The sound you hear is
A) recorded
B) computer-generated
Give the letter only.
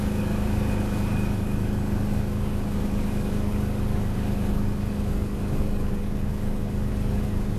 B